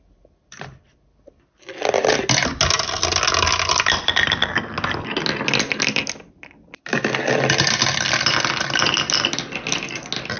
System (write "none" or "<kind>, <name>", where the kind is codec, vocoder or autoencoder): none